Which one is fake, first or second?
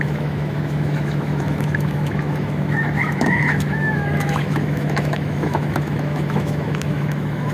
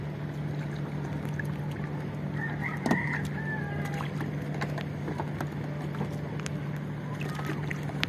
first